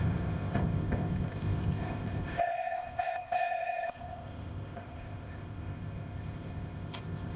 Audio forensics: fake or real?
fake